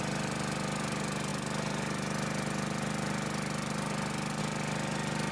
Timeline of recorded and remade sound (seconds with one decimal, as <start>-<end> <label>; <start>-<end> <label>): 0.0-5.3 recorded